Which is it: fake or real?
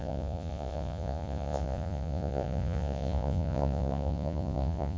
fake